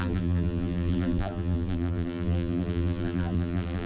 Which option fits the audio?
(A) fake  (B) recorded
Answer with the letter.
A